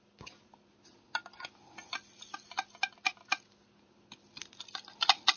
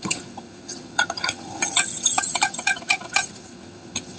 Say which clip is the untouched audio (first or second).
first